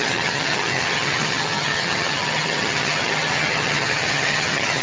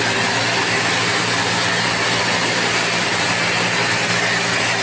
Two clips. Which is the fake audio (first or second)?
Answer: first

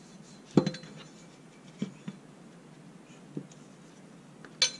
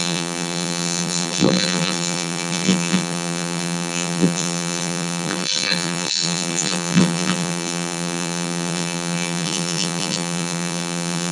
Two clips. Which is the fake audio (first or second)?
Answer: second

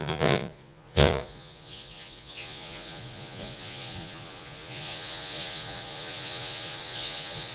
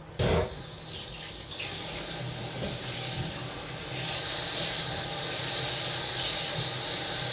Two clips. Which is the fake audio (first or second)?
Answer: first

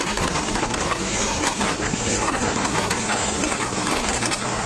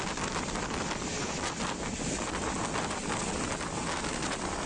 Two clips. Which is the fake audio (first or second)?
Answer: first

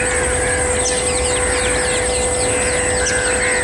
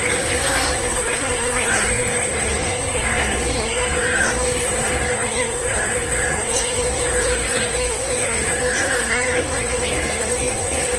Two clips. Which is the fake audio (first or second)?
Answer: second